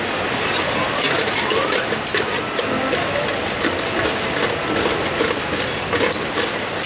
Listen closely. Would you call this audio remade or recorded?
recorded